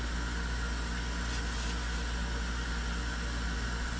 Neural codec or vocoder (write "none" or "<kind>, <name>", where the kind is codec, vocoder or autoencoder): none